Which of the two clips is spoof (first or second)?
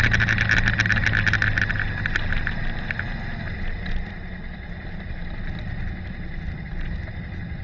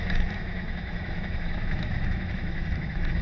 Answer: second